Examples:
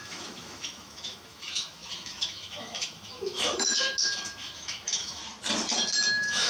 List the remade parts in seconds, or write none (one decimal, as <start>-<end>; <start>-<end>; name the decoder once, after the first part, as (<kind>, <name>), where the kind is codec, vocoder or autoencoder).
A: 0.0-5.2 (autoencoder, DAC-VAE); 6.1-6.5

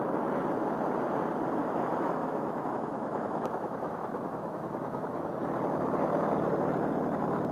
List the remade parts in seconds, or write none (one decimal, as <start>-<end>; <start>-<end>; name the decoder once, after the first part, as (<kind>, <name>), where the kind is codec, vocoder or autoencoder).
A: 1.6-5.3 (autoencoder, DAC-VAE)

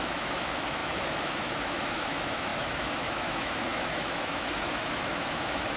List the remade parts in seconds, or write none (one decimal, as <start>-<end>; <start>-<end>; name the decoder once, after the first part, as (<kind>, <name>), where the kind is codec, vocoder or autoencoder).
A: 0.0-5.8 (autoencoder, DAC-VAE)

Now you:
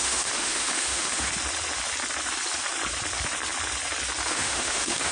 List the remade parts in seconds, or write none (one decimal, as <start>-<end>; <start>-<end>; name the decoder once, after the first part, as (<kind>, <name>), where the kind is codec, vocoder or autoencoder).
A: 0.0-1.3 (autoencoder, DAC-VAE); 4.3-5.1

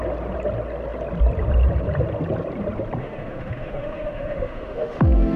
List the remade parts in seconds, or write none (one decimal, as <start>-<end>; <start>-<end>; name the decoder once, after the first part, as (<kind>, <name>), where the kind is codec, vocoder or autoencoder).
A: 3.0-5.4 (autoencoder, DAC-VAE)

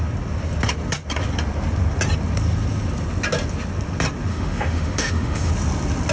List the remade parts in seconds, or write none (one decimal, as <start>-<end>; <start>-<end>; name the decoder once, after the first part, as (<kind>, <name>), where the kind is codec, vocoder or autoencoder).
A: 4.3-5.5 (autoencoder, DAC-VAE)